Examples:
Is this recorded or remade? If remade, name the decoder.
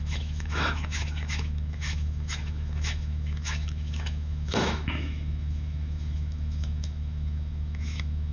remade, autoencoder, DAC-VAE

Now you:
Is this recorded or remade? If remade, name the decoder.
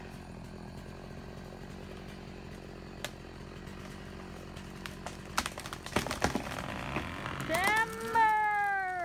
recorded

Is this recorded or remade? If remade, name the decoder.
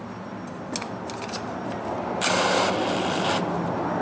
recorded